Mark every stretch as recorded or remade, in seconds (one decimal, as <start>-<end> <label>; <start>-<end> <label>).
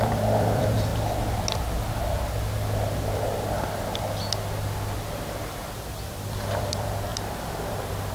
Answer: 0.0-0.9 remade; 0.9-5.8 recorded; 5.8-8.1 remade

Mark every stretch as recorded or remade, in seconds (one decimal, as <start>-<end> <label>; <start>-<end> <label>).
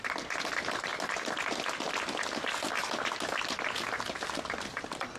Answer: 0.0-5.2 recorded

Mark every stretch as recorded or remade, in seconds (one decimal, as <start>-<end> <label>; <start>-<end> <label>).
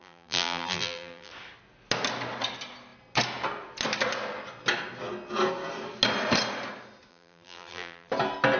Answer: 0.0-1.3 remade; 1.3-7.1 recorded; 7.1-8.1 remade; 8.1-8.6 recorded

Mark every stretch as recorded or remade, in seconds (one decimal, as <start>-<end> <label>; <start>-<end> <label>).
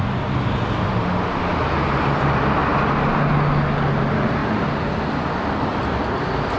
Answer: 0.0-6.6 recorded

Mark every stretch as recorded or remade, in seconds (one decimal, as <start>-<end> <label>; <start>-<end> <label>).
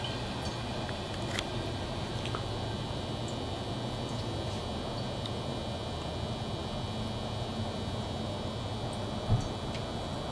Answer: 0.0-10.3 recorded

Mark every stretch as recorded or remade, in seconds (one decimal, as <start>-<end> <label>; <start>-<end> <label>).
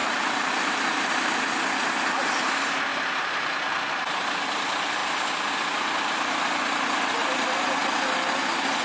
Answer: 0.0-1.4 remade; 1.4-8.8 recorded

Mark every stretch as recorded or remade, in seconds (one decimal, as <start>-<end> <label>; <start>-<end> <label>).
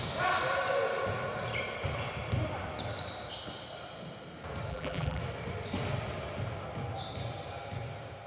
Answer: 0.0-4.7 recorded; 4.7-5.2 remade; 5.2-8.3 recorded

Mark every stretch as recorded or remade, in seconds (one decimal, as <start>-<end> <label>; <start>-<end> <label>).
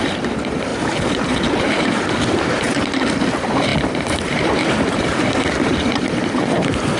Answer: 0.0-7.0 remade